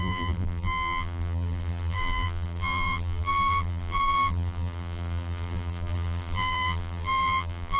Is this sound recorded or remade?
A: remade